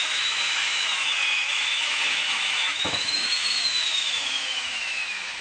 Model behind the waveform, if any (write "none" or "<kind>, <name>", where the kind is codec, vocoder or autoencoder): autoencoder, DAC-VAE